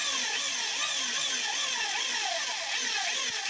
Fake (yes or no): no